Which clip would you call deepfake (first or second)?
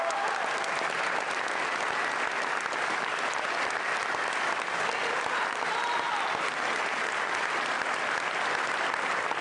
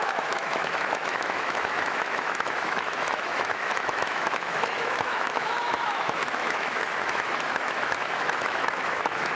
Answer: second